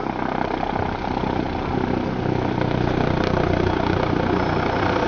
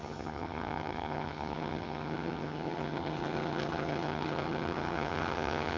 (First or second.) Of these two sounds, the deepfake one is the second